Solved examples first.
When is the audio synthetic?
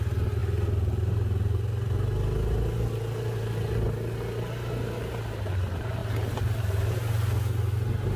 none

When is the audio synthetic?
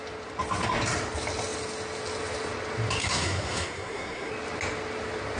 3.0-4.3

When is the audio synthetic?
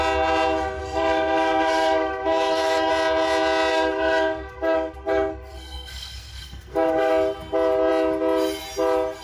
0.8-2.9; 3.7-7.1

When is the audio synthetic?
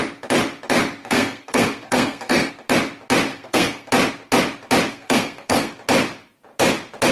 1.0-2.5; 3.3-3.9; 4.9-5.7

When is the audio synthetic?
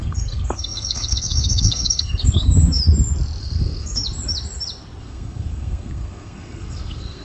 0.0-2.8; 3.4-4.0; 5.0-7.2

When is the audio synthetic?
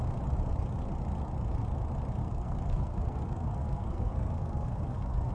2.2-5.3